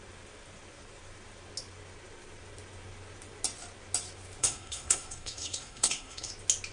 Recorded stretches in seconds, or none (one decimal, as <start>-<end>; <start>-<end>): 0.0-4.4; 6.3-6.7